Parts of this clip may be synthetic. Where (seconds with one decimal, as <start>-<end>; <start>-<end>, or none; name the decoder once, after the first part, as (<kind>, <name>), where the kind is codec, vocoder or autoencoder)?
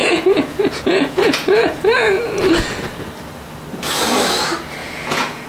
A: 0.0-2.3 (vocoder, Vocos); 4.8-5.5